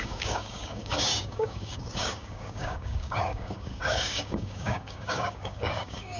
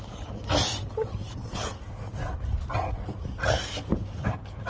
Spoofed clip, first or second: first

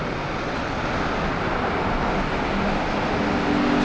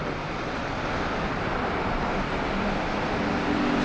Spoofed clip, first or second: second